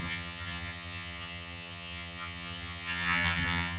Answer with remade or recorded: remade